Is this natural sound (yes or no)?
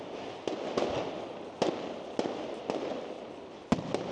yes